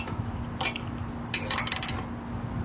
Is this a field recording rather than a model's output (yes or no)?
yes